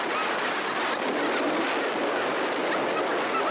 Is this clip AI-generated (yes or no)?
no